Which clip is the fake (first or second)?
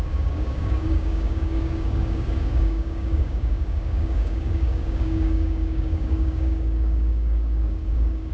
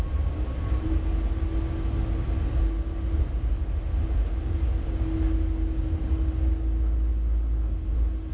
first